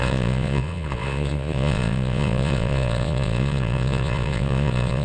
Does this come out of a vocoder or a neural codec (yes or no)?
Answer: yes